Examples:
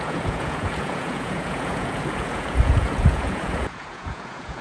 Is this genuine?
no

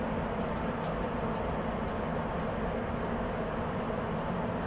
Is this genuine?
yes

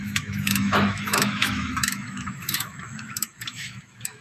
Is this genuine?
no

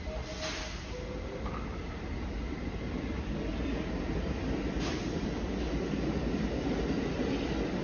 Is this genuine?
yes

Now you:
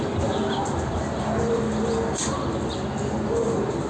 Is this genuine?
yes